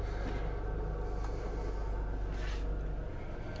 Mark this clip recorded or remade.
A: recorded